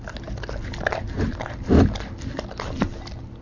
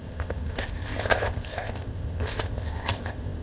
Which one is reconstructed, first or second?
second